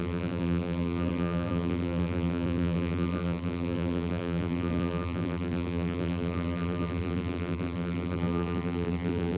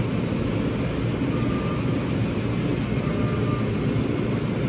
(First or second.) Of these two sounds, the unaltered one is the second